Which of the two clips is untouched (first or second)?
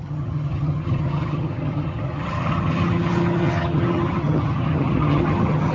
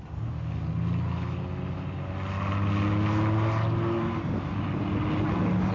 second